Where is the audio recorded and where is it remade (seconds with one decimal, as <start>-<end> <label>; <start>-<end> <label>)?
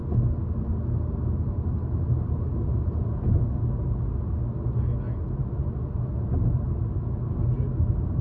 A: 0.0-8.2 recorded